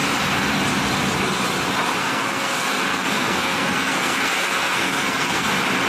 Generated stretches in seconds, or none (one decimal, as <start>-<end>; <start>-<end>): 2.0-5.5